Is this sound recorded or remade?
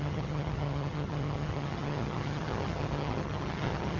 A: remade